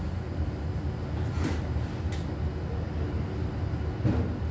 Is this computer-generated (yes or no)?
no